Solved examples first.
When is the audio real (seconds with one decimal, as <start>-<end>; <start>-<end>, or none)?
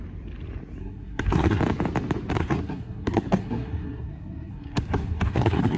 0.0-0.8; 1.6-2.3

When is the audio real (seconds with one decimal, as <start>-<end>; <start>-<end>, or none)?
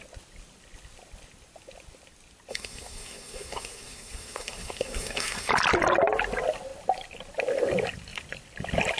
0.0-2.5; 5.5-9.0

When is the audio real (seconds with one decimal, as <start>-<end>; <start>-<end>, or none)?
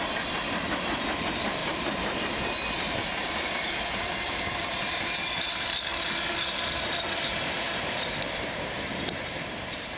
none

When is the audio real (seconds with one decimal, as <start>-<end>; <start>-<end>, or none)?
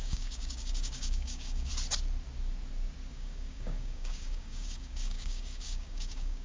1.7-3.1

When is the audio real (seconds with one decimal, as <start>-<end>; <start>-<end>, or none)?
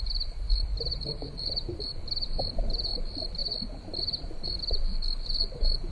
3.4-4.0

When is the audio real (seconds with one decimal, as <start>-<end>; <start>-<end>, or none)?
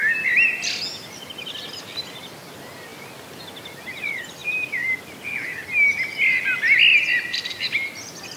0.0-4.4; 5.0-6.9; 7.6-8.4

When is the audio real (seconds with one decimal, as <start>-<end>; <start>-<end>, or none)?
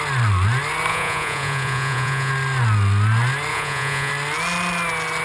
0.0-0.9; 2.3-3.5; 4.1-5.2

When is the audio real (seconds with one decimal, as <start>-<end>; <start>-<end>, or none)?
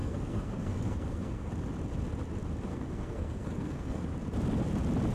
1.5-2.7; 4.0-5.1